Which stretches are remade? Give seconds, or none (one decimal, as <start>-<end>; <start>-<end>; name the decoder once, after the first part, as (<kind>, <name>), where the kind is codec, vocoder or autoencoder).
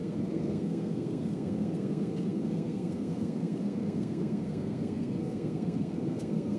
0.0-6.6 (codec, SNAC)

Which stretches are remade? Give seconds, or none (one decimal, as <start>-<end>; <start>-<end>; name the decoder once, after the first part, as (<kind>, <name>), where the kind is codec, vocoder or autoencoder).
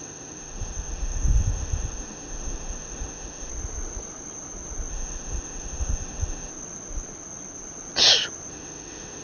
0.0-3.5 (autoencoder, DAC-VAE); 4.9-6.5; 8.5-9.2